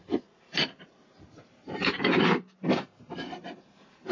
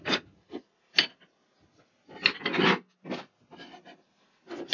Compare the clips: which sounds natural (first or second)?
second